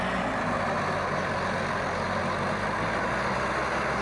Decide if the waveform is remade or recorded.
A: recorded